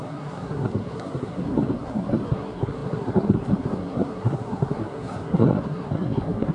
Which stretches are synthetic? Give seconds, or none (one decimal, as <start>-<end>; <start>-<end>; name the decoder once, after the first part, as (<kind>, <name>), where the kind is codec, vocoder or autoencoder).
0.0-6.5 (codec, SNAC)